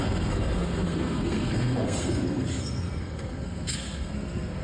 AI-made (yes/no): yes